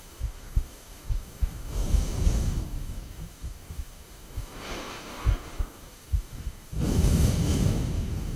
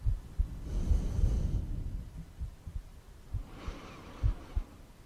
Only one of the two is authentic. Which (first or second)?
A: second